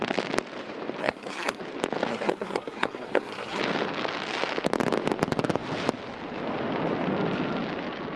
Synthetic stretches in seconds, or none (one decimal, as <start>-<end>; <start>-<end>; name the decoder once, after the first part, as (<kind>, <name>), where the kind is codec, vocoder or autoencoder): 1.0-1.6 (codec, SNAC); 2.1-3.6